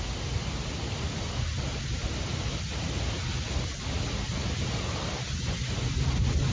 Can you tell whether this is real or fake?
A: real